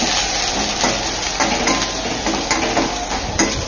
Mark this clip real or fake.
real